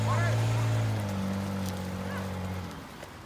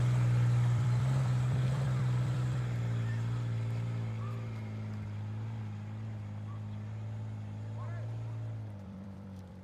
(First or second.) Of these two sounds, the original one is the first